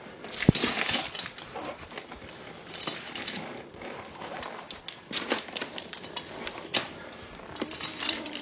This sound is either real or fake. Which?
real